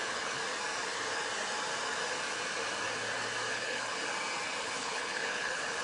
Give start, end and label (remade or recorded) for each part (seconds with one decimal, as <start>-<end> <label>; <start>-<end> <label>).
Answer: 0.0-0.4 remade; 0.4-3.5 recorded; 3.5-4.0 remade; 4.0-4.6 recorded; 4.6-5.8 remade